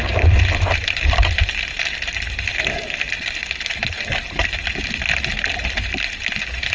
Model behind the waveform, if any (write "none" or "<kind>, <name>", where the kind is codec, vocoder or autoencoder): none